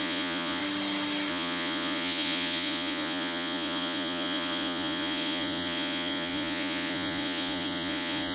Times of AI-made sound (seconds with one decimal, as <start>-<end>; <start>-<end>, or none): 0.0-0.6; 1.3-8.3